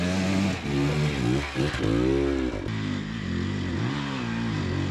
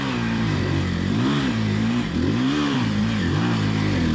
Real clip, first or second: first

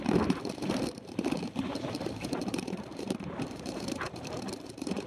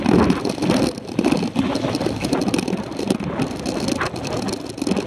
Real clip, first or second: second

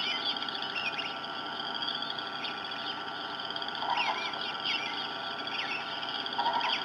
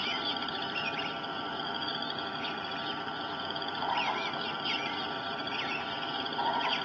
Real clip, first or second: first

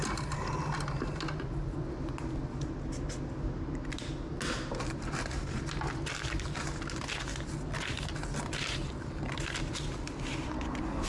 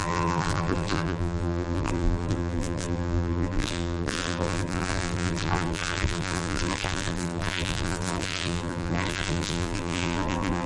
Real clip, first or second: first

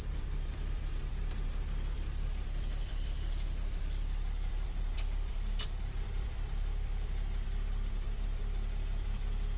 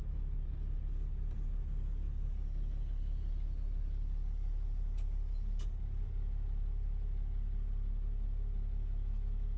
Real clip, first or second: second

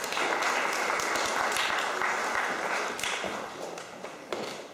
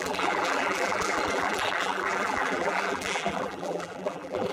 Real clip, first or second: first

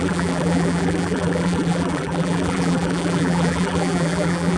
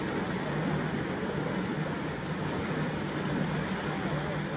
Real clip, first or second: second